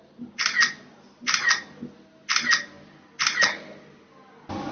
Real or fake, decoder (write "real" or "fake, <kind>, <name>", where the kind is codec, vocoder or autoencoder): real